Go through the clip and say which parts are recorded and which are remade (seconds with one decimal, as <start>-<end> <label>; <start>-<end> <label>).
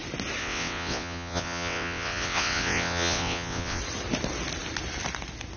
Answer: 0.0-0.4 recorded; 0.4-3.8 remade; 3.8-5.6 recorded